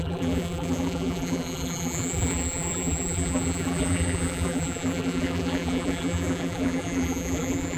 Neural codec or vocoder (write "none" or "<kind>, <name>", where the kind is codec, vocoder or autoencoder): vocoder, BigVGAN v2